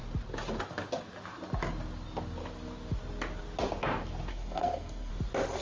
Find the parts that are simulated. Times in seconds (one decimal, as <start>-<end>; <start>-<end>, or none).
4.3-5.1

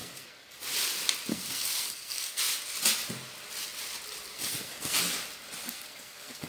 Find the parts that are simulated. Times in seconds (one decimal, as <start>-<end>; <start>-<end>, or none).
0.0-0.6; 1.3-2.4; 4.3-5.0; 5.6-6.5